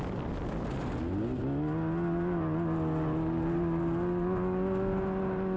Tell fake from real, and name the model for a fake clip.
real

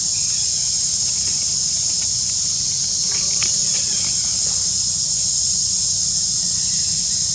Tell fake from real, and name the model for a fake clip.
real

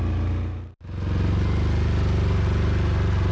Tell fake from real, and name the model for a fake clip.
real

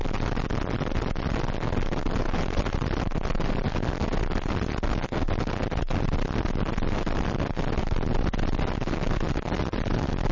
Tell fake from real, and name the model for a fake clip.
real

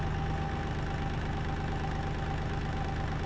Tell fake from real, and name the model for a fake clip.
real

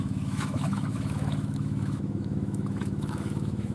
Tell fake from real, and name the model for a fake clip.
fake, autoencoder, DAC-VAE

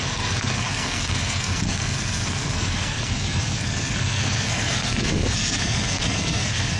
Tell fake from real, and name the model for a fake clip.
fake, codec, SNAC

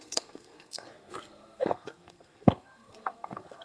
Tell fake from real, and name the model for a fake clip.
fake, codec, SNAC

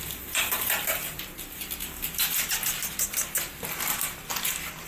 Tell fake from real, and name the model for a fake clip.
real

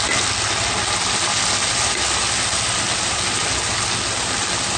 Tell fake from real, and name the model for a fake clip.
real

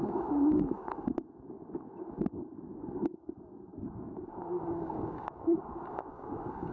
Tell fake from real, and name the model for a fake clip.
fake, codec, DAC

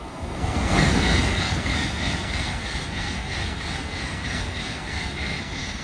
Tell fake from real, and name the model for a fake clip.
fake, codec, SNAC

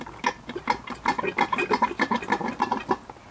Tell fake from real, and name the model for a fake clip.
real